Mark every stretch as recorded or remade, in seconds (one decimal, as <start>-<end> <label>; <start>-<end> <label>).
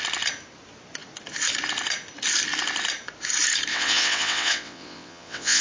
0.0-3.7 recorded; 3.7-5.6 remade